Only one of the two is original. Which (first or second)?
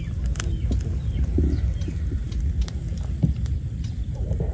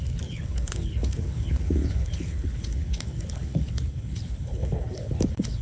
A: first